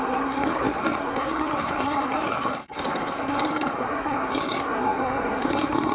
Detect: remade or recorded remade